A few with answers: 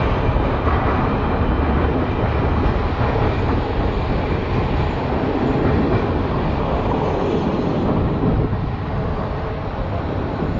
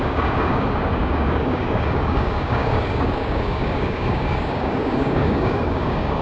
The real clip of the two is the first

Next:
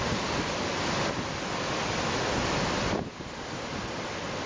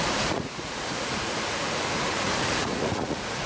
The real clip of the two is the first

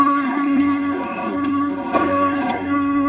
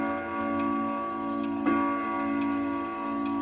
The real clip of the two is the second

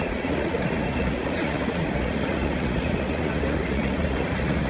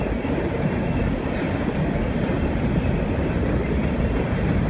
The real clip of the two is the second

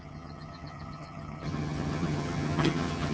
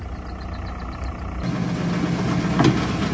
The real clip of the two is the second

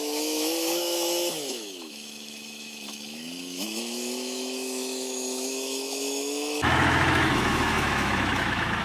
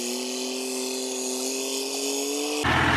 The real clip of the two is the second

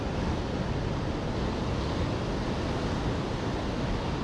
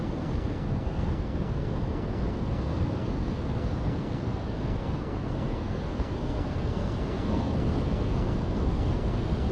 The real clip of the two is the first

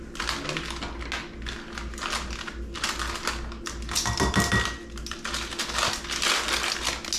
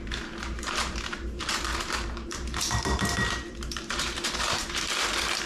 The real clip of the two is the first